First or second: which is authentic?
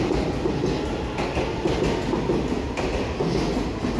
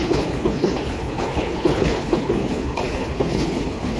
first